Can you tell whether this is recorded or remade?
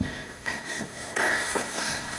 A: remade